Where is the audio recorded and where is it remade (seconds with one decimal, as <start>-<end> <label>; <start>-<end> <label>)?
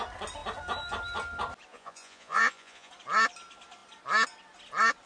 0.0-1.7 recorded; 1.7-2.9 remade; 2.9-5.1 recorded